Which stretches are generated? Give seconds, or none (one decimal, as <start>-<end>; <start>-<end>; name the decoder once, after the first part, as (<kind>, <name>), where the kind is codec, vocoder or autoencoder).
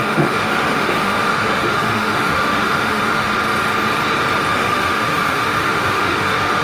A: 0.0-3.3 (autoencoder, DAC-VAE); 4.5-6.6